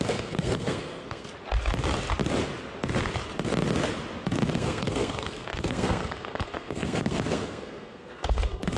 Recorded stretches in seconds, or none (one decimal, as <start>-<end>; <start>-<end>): 1.3-4.5